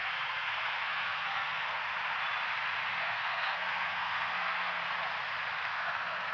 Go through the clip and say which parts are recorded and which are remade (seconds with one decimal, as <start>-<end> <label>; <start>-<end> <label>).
0.0-1.8 remade; 1.8-3.0 recorded; 3.0-4.8 remade; 4.8-5.7 recorded; 5.7-6.3 remade